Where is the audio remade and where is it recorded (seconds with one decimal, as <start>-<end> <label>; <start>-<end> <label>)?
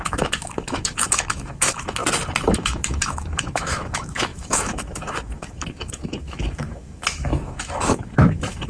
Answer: 0.0-2.0 remade; 2.0-2.6 recorded; 2.6-8.7 remade